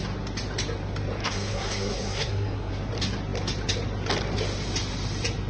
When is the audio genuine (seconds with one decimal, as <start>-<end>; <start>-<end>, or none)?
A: 0.0-1.2; 2.7-5.5